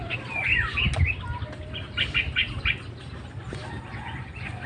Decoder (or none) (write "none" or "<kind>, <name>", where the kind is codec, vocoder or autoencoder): none